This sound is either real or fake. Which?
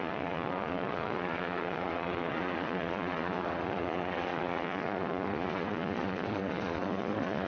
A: fake